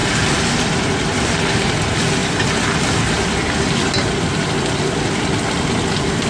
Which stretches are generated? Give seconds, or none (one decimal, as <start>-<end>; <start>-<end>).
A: none